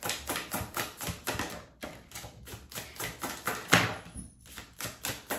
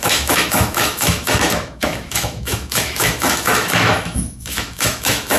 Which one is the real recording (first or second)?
first